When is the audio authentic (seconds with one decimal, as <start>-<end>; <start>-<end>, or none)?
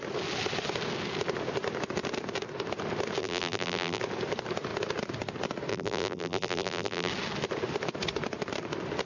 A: 0.0-3.2; 4.0-5.7; 7.1-9.1